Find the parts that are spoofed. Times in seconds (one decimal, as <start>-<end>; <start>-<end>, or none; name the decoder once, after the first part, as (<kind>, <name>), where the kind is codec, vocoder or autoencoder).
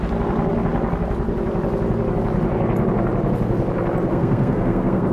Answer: 4.1-5.1 (codec, SNAC)